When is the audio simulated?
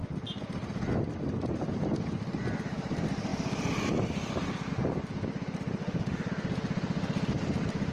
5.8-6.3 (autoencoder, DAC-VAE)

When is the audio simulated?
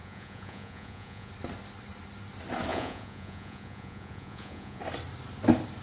0.0-1.3 (vocoder, Vocos); 2.7-4.8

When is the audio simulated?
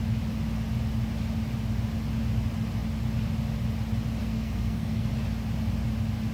4.2-5.1 (codec, SNAC)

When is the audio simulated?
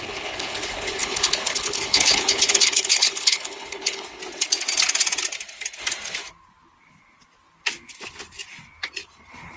0.0-4.2 (codec, HILCodec)